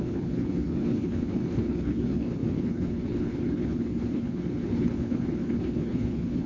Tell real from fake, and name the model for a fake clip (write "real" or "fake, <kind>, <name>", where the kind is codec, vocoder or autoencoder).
fake, codec, HILCodec